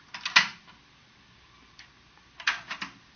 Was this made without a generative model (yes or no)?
yes